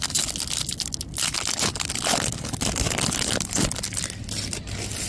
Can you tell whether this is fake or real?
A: real